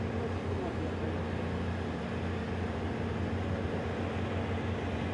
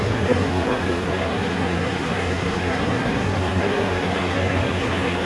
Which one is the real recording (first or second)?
first